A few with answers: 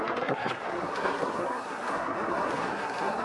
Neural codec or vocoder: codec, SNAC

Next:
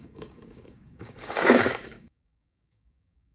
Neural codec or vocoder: codec, DAC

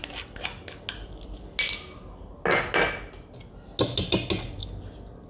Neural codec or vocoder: none